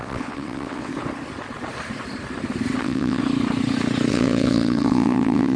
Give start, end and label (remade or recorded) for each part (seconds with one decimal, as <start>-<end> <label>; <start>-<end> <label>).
0.0-0.9 remade; 0.9-2.8 recorded; 2.8-3.2 remade; 3.2-4.1 recorded; 4.1-5.6 remade